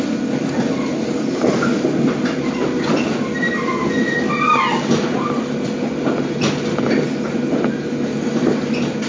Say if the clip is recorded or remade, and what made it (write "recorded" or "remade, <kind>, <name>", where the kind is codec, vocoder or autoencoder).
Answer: recorded